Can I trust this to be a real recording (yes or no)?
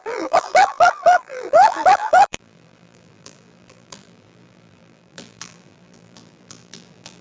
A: no